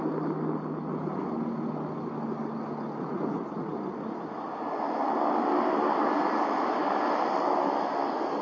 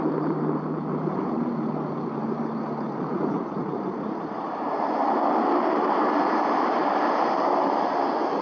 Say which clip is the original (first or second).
first